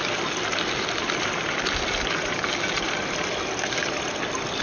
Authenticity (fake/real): real